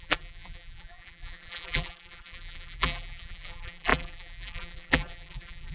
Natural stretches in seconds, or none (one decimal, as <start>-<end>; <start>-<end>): none